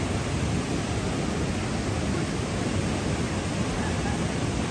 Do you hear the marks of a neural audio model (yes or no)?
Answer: no